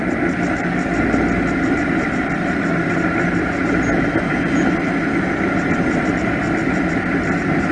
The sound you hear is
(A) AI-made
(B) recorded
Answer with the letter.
B